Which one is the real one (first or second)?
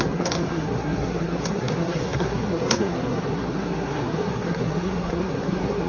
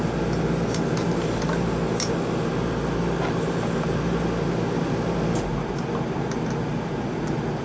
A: second